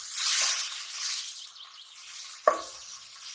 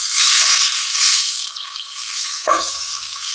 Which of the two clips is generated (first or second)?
second